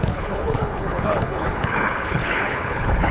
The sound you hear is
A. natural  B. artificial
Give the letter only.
B